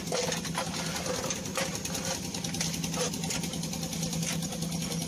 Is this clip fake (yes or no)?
no